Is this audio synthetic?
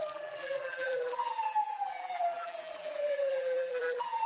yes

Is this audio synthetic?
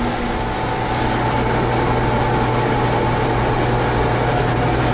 no